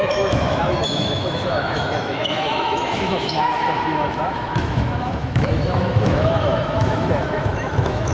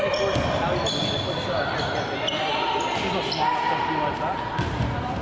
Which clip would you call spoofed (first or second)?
first